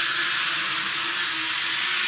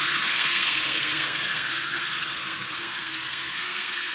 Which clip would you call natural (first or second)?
first